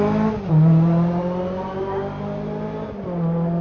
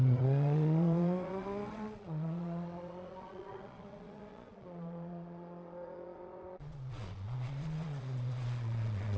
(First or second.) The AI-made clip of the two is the second